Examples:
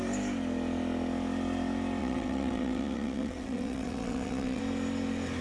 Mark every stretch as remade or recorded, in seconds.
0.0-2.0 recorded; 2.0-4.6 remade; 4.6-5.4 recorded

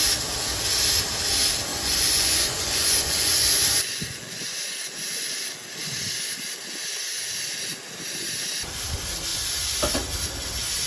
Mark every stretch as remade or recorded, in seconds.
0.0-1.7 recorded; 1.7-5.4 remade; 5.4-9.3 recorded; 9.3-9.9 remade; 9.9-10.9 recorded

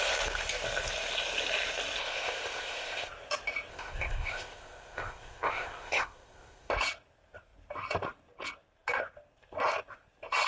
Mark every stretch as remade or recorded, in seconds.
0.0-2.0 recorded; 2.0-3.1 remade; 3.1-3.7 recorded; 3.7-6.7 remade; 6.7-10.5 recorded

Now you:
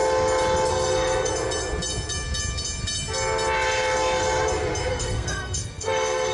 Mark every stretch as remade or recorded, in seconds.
0.0-0.7 recorded; 0.7-1.3 remade; 1.3-4.9 recorded; 4.9-6.3 remade

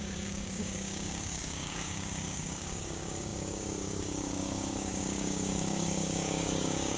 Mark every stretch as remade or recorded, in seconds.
0.0-7.0 remade